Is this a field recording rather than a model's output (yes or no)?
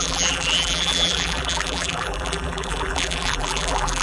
no